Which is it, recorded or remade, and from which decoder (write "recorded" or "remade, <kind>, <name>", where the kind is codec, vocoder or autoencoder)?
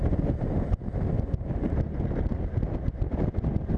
recorded